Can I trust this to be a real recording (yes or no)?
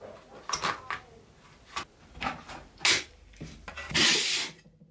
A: yes